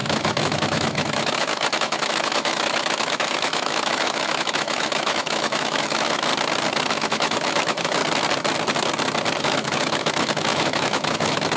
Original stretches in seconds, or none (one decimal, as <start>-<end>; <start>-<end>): 6.3-6.9; 8.0-9.4